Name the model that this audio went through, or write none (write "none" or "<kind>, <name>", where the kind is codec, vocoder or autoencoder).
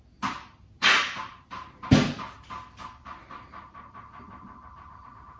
none